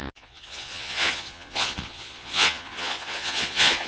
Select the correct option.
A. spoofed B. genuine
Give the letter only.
A